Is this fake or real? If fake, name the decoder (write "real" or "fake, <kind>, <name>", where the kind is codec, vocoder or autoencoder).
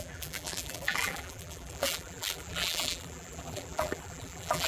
fake, vocoder, BigVGAN v2